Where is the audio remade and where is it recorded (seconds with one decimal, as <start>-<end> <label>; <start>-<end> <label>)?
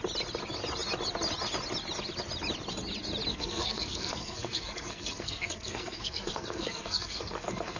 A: 0.0-3.3 recorded; 3.3-7.8 remade